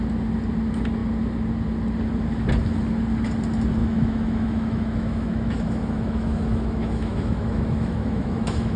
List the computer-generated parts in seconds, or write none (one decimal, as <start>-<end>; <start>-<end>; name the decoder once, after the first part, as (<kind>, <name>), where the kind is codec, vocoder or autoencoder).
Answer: 3.8-8.8 (autoencoder, DAC-VAE)